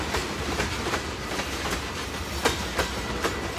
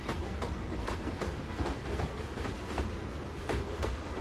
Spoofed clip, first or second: second